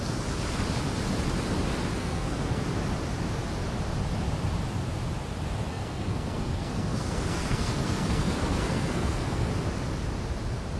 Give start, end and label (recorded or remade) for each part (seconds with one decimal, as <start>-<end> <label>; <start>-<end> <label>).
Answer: 0.0-2.0 recorded; 2.0-2.6 remade; 2.6-5.7 recorded; 5.7-9.5 remade; 9.5-10.8 recorded